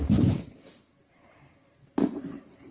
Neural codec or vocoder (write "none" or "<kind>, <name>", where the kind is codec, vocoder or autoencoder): vocoder, BigVGAN v2